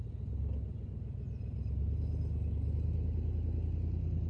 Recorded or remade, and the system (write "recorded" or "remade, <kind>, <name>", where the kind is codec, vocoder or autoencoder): recorded